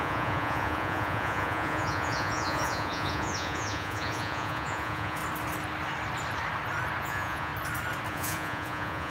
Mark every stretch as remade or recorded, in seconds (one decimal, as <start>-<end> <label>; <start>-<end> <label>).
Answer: 0.0-5.2 remade; 5.2-7.0 recorded; 7.0-7.5 remade; 7.5-8.1 recorded; 8.1-9.1 remade